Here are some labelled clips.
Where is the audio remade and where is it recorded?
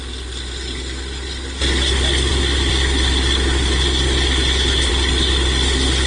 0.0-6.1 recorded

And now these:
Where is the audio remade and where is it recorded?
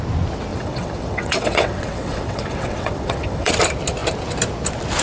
0.0-0.5 recorded; 0.5-3.5 remade; 3.5-5.0 recorded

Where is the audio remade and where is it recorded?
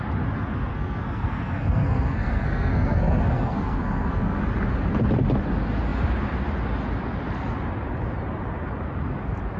0.0-0.7 recorded; 0.7-4.4 remade; 4.4-9.6 recorded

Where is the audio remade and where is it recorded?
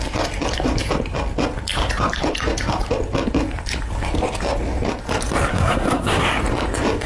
0.0-5.5 recorded; 5.5-6.3 remade; 6.3-7.1 recorded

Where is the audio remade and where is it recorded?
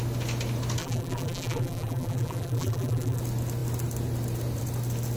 0.0-0.8 recorded; 0.8-3.2 remade; 3.2-5.2 recorded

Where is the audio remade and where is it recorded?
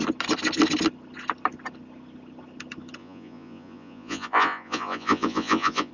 0.0-3.0 recorded; 3.0-5.9 remade